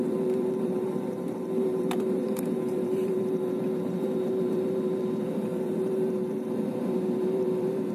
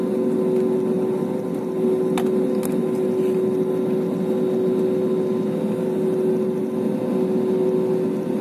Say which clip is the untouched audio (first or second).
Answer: second